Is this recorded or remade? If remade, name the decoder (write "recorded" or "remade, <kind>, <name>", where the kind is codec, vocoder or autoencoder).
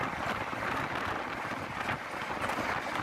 recorded